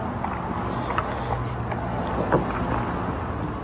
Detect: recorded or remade recorded